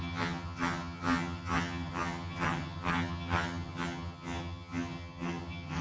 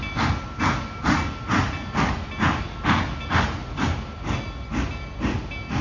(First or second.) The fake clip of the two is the first